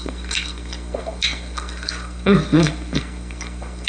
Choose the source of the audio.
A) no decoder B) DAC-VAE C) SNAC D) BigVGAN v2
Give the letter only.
C